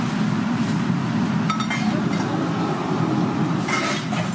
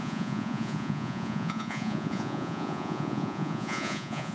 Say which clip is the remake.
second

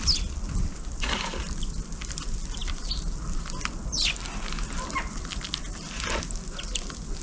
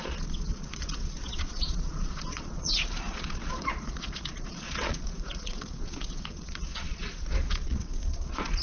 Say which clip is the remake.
second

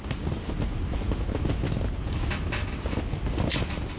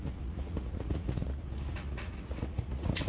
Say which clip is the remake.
second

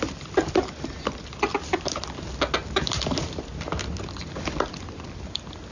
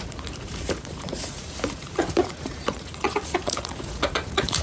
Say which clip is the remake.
second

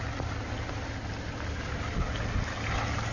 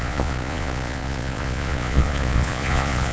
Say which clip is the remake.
second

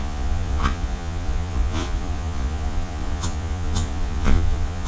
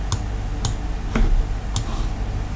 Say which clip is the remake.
first